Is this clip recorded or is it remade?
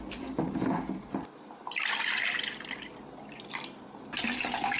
recorded